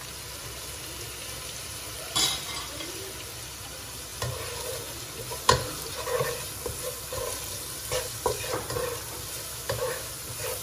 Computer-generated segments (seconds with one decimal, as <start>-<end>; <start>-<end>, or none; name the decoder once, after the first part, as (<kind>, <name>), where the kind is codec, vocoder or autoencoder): 9.5-10.1 (autoencoder, DAC-VAE)